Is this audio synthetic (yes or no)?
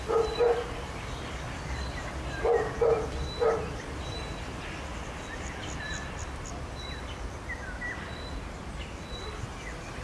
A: no